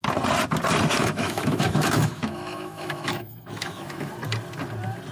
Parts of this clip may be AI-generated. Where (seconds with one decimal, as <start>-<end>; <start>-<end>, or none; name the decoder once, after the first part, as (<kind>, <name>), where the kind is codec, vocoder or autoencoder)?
1.0-4.1 (autoencoder, DAC-VAE)